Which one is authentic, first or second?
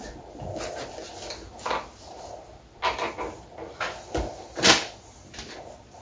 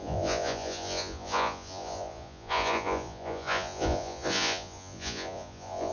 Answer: first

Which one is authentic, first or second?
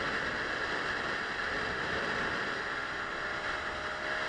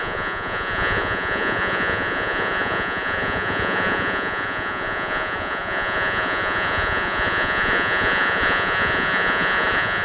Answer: first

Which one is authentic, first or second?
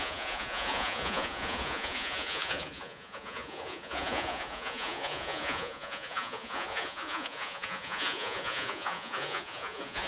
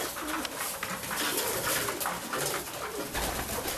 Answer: second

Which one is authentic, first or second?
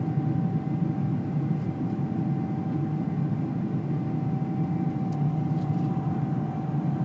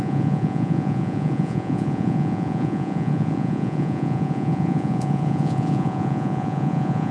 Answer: first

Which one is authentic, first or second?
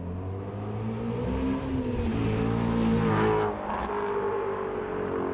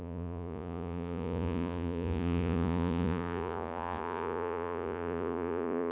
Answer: first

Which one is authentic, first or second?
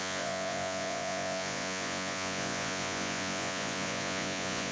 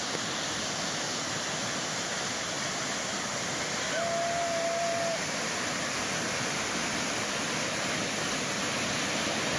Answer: second